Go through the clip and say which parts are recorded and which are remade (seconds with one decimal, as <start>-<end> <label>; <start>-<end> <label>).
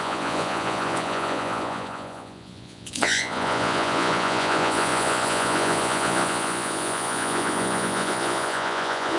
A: 0.0-9.2 remade